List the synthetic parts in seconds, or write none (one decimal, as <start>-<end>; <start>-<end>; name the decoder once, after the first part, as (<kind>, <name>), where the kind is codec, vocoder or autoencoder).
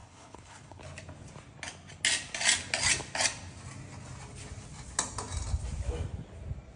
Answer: 0.0-0.8 (codec, HILCodec)